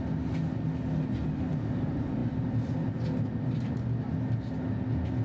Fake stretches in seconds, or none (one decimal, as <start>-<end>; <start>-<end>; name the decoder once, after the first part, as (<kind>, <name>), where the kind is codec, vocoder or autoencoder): none